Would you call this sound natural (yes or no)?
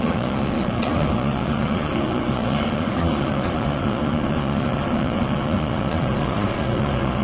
no